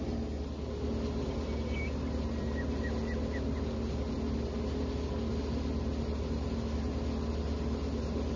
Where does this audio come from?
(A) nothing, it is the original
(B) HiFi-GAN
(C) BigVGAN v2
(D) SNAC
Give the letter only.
A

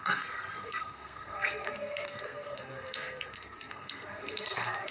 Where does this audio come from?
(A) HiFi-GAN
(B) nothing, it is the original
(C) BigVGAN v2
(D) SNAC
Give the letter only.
D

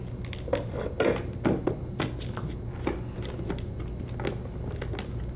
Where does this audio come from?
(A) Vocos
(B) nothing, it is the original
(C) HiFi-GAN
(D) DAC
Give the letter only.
B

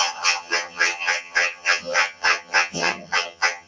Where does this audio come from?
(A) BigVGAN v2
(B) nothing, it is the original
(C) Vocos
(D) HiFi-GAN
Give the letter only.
D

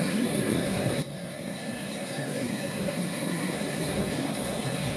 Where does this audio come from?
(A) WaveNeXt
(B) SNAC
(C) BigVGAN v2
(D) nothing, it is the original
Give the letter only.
B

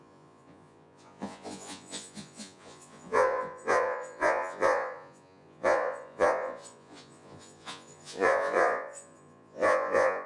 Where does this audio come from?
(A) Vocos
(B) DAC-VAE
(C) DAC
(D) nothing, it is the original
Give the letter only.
A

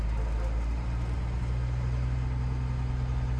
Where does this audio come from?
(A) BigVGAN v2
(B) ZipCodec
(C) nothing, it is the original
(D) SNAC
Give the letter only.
C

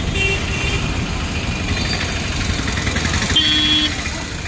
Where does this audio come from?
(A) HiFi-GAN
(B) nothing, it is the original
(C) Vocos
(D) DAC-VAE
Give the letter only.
B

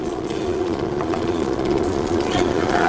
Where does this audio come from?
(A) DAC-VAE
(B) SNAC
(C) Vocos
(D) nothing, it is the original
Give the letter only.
C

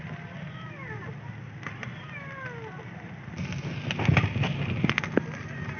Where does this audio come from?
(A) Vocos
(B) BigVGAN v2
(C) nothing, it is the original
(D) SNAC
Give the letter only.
C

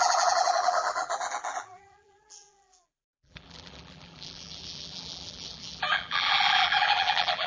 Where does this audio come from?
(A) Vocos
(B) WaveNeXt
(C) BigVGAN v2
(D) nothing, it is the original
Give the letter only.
C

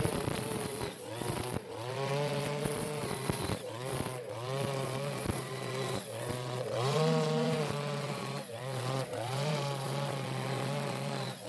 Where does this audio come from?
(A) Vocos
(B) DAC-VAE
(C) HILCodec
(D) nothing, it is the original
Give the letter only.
A